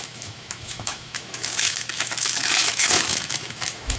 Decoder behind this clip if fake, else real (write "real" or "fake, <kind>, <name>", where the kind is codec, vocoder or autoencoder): fake, autoencoder, DAC-VAE